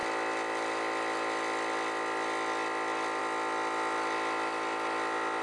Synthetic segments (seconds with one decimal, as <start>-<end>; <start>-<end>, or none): none